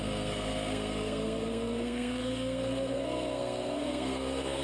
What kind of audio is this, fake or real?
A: fake